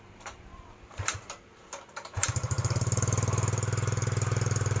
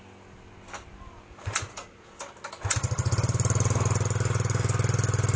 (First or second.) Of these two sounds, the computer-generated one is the first